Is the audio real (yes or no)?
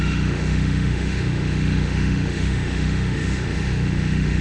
no